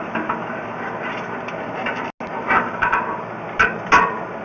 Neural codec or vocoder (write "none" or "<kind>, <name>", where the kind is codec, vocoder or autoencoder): none